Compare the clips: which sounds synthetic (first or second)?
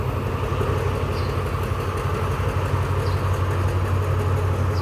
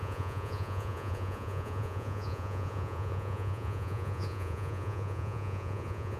second